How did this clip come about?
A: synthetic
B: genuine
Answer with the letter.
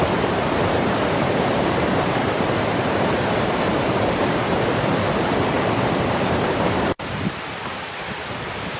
A